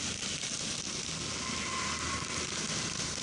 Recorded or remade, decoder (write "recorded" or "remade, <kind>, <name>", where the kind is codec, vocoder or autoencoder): recorded